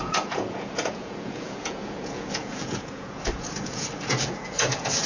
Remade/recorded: remade